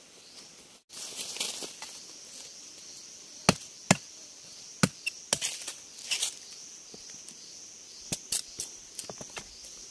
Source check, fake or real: real